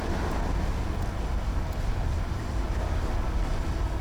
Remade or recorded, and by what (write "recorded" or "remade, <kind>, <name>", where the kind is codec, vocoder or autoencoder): recorded